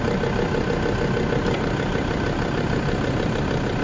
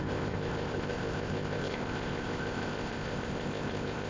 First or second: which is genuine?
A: first